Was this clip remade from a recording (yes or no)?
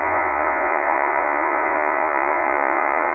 yes